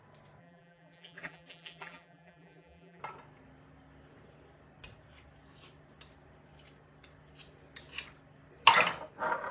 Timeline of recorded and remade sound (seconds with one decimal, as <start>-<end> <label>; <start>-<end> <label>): 0.0-0.4 recorded; 0.4-3.0 remade; 3.0-9.5 recorded